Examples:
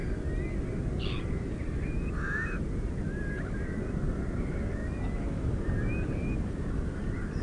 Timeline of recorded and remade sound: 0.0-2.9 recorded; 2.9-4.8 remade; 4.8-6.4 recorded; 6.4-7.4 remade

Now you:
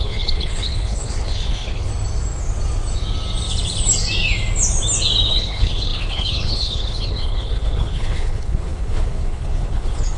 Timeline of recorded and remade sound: 0.0-1.9 remade; 1.9-5.3 recorded; 5.3-10.2 remade